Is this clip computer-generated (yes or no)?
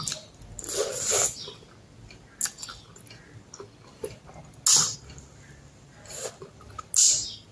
no